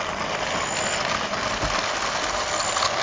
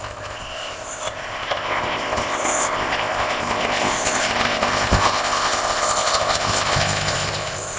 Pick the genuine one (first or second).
first